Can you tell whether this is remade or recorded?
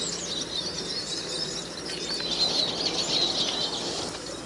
recorded